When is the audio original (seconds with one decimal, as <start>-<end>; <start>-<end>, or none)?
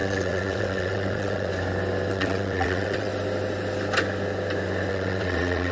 1.5-2.1; 3.1-4.9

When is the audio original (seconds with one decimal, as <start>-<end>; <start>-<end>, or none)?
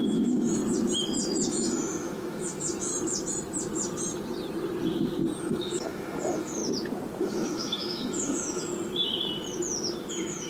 0.6-1.5; 2.9-5.4; 6.6-7.2; 8.7-10.1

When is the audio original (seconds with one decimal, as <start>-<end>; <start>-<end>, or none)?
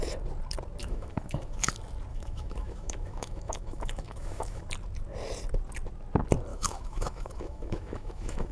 0.0-0.8; 1.7-2.1; 4.7-6.5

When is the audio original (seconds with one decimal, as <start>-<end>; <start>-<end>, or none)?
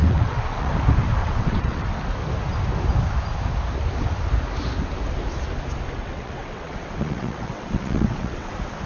0.7-1.2; 1.8-6.0; 8.5-8.9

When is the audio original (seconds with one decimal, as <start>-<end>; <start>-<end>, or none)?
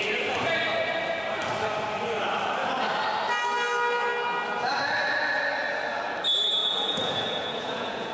0.0-6.6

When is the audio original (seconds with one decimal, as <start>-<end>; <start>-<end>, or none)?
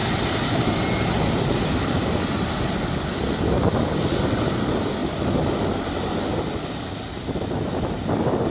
4.6-8.5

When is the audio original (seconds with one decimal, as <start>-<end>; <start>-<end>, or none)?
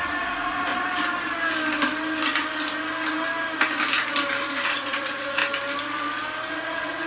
0.7-4.5; 5.4-6.5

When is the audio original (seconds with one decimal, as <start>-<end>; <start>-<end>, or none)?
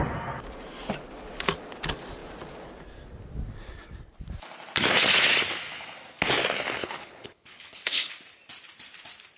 0.0-6.8; 8.1-9.4